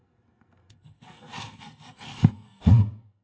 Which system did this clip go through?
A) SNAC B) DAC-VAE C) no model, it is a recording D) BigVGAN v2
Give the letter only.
A